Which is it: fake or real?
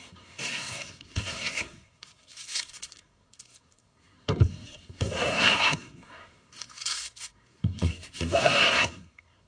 fake